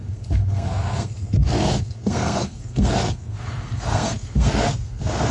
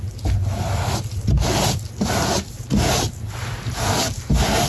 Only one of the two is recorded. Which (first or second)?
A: second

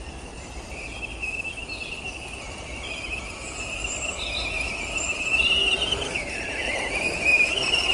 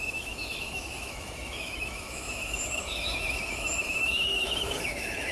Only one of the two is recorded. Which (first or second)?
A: first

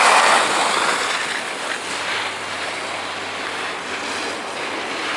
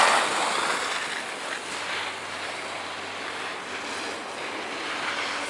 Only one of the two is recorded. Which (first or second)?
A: second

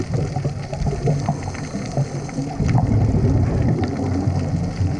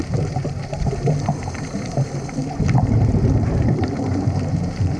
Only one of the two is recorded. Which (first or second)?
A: first